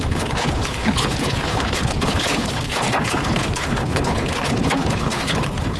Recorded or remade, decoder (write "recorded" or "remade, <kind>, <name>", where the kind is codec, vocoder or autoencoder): remade, codec, HILCodec